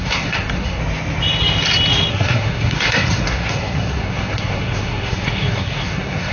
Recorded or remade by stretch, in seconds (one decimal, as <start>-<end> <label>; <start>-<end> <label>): 0.0-0.8 remade; 0.8-2.1 recorded; 2.1-6.3 remade